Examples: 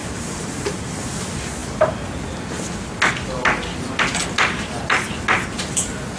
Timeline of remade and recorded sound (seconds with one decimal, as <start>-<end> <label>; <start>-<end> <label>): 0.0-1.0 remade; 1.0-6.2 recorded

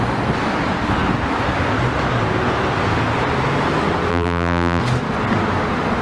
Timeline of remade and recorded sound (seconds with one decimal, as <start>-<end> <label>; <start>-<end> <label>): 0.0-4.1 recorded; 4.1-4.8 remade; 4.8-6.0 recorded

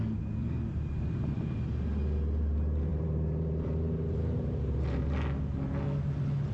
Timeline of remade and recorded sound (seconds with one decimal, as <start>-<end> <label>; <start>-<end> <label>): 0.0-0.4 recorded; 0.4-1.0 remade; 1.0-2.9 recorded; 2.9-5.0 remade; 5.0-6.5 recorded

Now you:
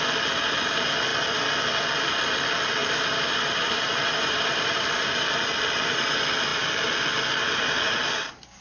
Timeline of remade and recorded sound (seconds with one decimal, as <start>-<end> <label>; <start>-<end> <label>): 0.0-2.8 recorded; 2.8-5.1 remade; 5.1-8.6 recorded

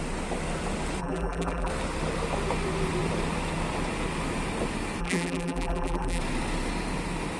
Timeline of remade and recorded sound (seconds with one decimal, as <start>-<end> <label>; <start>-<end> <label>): 0.0-1.0 recorded; 1.0-1.7 remade; 1.7-5.0 recorded; 5.0-6.2 remade; 6.2-7.4 recorded